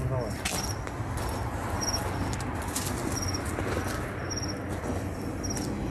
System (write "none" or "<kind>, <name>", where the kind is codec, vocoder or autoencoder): none